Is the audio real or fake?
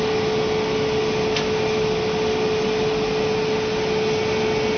real